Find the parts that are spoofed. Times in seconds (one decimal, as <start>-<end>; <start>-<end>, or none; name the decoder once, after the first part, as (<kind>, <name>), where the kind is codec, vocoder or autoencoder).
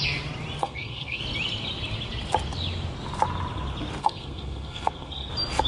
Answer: 0.6-1.2 (codec, SNAC); 4.0-5.3